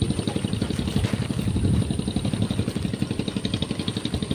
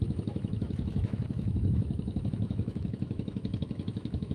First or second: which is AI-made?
second